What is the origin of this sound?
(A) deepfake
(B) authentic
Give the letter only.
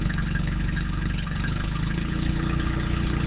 A